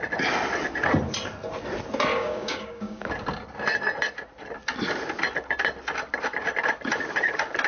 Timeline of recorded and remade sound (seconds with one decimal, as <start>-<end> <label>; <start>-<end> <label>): 0.0-2.1 recorded; 2.1-3.1 remade; 3.1-7.7 recorded